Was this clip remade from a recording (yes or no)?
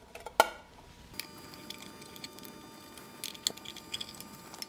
no